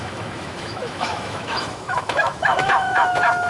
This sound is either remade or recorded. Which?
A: remade